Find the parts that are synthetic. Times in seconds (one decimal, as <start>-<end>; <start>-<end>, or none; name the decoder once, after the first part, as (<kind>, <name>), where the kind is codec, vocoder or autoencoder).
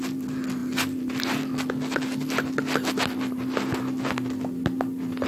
none